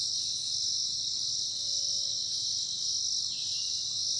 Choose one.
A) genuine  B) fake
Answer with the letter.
A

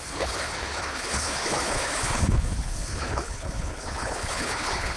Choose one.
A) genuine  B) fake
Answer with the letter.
B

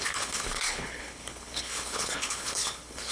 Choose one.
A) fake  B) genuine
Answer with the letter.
A